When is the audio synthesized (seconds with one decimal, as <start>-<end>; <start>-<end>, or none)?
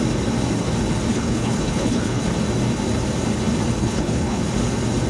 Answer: 1.1-2.2; 3.8-4.4